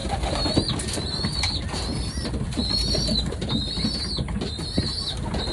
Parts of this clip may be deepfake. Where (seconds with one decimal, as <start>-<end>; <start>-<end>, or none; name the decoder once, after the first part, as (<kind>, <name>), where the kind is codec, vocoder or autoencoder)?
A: 0.0-3.3 (vocoder, BigVGAN v2)